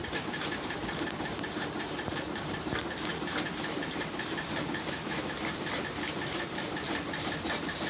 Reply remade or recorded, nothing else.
remade